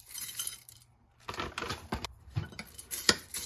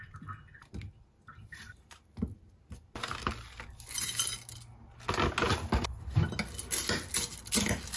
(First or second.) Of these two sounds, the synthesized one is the first